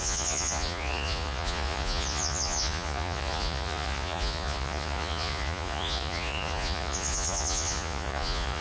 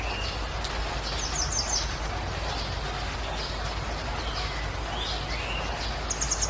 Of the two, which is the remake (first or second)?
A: first